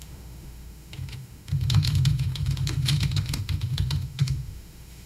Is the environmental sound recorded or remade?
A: remade